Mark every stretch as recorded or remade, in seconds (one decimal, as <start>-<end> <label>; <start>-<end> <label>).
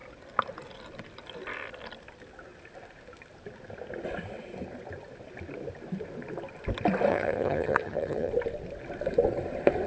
0.0-7.1 recorded; 7.1-8.3 remade; 8.3-9.9 recorded